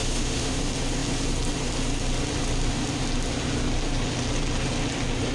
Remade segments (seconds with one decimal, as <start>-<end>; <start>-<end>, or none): 0.0-0.6